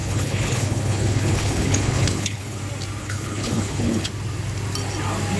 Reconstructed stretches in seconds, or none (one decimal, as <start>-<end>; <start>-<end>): 0.0-2.6; 3.0-4.1